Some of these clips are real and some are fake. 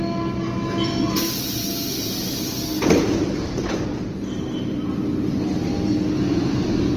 real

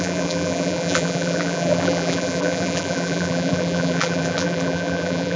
fake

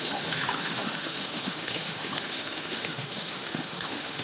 fake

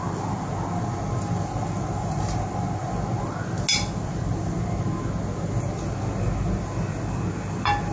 real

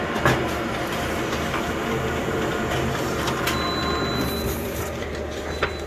fake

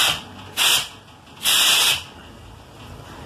real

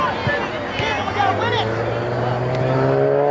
real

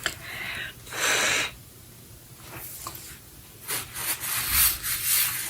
real